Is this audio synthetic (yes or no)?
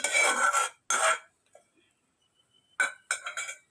no